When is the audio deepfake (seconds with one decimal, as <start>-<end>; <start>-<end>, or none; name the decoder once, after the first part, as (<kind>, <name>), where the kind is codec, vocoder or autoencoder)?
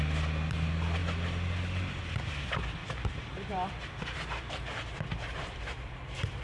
2.8-6.4 (vocoder, BigVGAN v2)